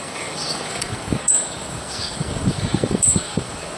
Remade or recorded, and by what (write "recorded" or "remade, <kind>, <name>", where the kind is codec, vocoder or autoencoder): remade, codec, SNAC